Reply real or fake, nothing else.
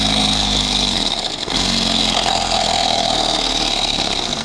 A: fake